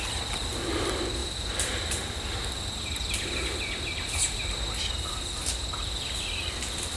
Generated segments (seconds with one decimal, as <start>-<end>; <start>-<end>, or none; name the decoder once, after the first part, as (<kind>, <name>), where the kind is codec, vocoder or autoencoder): 1.2-1.9 (vocoder, BigVGAN v2)